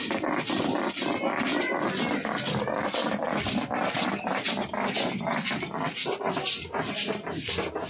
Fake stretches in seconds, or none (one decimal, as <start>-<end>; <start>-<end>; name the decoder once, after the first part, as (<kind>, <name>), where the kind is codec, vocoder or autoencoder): none